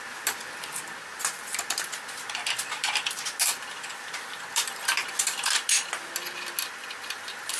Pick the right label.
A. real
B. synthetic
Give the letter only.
B